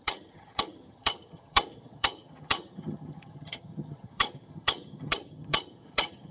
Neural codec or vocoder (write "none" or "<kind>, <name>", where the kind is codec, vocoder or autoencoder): vocoder, HiFi-GAN